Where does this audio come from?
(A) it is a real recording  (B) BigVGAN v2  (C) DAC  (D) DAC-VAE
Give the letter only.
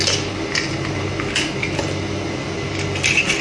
A